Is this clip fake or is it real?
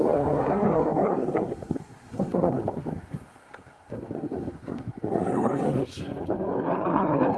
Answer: fake